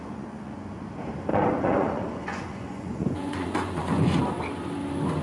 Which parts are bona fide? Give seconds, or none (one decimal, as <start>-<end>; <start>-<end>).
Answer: 0.8-1.3; 4.2-5.2